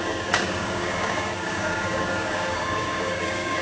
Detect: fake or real fake